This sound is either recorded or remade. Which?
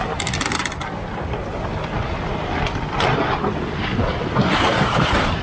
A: recorded